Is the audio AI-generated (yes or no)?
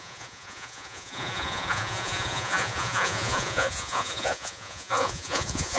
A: yes